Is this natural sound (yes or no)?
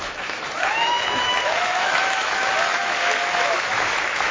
no